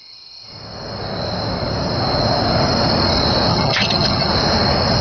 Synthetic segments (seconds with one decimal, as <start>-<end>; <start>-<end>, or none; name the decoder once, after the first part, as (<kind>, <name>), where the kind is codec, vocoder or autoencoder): 3.5-4.3 (vocoder, HiFi-GAN)